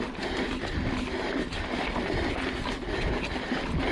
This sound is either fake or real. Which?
real